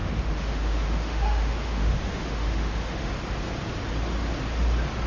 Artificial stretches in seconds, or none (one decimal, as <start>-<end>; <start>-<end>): 0.0-3.1